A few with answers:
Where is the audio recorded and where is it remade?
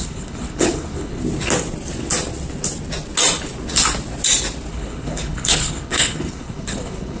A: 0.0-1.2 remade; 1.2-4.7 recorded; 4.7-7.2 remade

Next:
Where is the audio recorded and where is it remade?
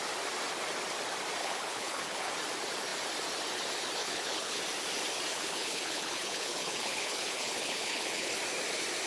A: 0.0-1.4 recorded; 1.4-2.3 remade; 2.3-4.0 recorded; 4.0-4.6 remade; 4.6-5.3 recorded; 5.3-8.4 remade; 8.4-9.1 recorded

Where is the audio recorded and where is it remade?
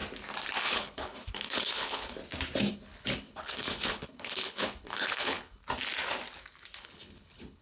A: 0.0-0.6 recorded; 0.6-2.2 remade; 2.2-2.7 recorded; 2.7-5.6 remade; 5.6-6.8 recorded; 6.8-7.6 remade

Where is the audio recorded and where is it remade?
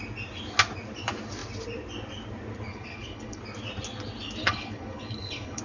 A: 0.0-2.7 recorded; 2.7-3.4 remade; 3.4-4.4 recorded; 4.4-5.6 remade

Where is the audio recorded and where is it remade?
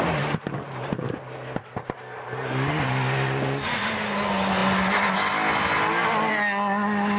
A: 0.0-7.2 recorded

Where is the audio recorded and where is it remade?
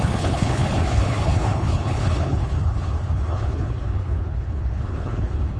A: 0.0-5.6 remade